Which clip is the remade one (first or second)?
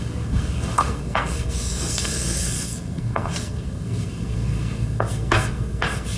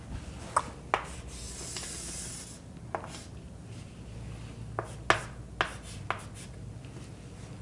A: first